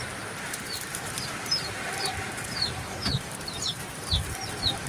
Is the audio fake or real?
fake